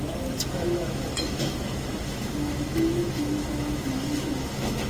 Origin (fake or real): fake